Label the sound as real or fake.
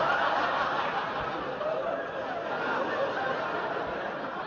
real